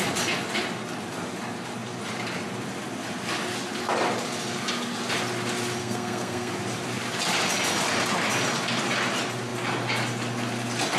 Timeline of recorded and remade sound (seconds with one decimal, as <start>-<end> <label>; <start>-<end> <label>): 0.0-5.8 recorded; 5.8-6.5 remade; 6.5-11.0 recorded